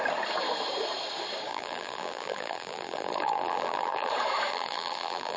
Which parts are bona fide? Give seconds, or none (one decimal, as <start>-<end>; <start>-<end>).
0.0-1.5; 4.1-4.5